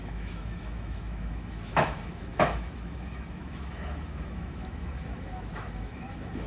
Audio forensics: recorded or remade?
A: remade